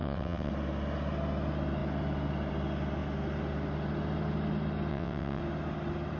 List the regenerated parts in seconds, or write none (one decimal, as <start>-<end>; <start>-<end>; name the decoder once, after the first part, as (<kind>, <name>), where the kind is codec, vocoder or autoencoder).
0.0-0.5 (vocoder, WaveNeXt); 4.9-5.4